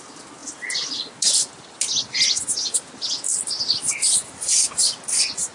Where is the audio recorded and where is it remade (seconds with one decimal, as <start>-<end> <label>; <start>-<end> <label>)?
0.0-5.5 recorded

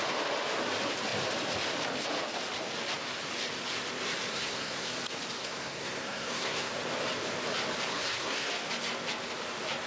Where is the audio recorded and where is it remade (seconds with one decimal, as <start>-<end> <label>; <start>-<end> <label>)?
0.0-4.3 recorded; 4.3-4.9 remade; 4.9-5.4 recorded; 5.4-6.7 remade; 6.7-7.9 recorded; 7.9-8.5 remade; 8.5-9.9 recorded